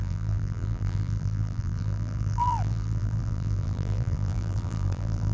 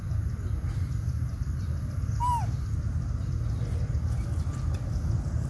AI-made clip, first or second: first